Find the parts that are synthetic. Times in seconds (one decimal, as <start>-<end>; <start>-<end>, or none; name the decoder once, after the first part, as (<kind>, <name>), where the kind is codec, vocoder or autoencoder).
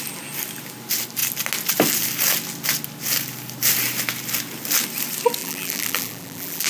5.4-6.7 (vocoder, BigVGAN v2)